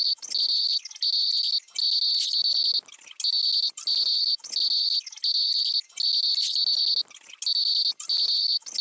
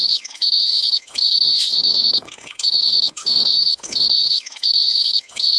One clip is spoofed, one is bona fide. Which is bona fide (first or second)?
first